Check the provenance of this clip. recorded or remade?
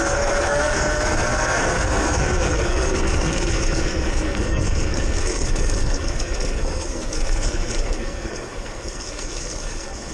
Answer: remade